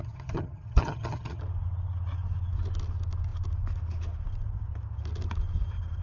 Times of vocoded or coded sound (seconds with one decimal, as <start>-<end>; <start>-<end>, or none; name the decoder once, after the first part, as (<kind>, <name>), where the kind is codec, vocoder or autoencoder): 0.0-1.4 (vocoder, HiFi-GAN)

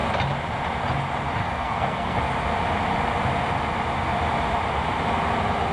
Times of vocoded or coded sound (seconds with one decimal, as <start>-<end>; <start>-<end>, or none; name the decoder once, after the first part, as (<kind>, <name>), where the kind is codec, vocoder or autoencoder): 1.4-2.2 (codec, SNAC)

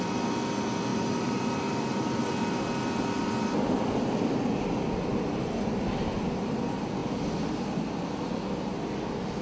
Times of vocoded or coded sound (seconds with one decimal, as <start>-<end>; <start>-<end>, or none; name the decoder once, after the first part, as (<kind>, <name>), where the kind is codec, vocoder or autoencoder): 0.9-1.5 (vocoder, BigVGAN v2)

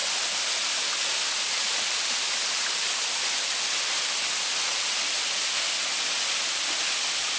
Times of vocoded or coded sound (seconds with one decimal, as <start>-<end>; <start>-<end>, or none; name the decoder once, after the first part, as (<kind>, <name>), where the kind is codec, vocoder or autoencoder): none

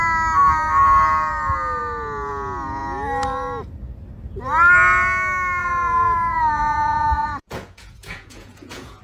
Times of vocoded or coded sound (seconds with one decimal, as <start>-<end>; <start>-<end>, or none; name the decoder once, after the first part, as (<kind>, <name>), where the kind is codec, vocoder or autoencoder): 5.6-9.0 (vocoder, Vocos)